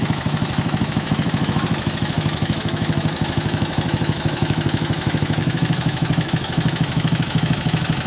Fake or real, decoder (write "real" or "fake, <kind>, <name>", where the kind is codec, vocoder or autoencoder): fake, autoencoder, DAC-VAE